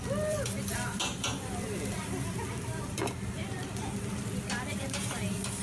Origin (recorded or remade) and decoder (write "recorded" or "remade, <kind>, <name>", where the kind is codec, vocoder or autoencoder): remade, vocoder, BigVGAN v2